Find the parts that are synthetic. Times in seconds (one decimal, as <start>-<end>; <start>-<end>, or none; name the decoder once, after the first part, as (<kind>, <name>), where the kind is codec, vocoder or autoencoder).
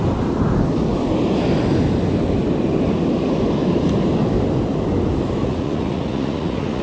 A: 5.4-6.8 (vocoder, Vocos)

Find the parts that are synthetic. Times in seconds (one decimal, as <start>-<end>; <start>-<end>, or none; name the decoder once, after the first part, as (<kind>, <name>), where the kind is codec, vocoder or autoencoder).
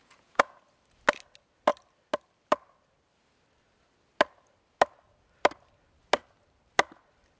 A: 0.0-0.6 (vocoder, Vocos)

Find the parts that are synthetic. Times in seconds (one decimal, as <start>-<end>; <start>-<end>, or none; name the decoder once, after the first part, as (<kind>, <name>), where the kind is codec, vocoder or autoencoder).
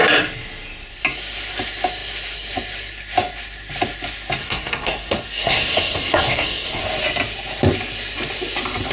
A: 4.4-6.8 (codec, SNAC)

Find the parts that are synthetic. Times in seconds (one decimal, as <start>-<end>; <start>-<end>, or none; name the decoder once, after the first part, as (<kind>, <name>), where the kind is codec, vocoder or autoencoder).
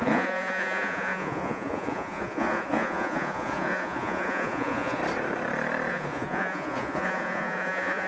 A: 0.0-5.0 (vocoder, Vocos); 5.9-8.1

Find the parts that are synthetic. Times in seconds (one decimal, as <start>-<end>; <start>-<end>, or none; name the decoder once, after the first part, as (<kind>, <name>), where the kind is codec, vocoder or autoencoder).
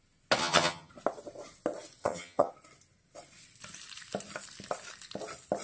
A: 0.4-0.9 (vocoder, HiFi-GAN); 2.0-2.5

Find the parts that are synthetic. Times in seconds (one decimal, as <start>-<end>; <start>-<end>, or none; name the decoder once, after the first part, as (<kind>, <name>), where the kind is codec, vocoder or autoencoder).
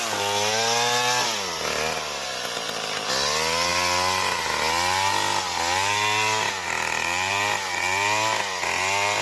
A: none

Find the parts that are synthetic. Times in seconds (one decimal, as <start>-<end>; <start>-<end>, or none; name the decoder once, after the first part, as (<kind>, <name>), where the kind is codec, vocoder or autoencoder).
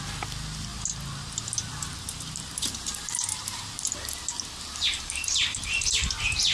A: 4.9-6.1 (vocoder, BigVGAN v2)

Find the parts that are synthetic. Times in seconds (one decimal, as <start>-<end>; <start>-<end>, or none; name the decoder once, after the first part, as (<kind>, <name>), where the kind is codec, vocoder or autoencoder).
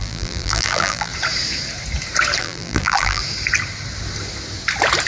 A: 0.0-1.1 (vocoder, BigVGAN v2); 2.4-3.2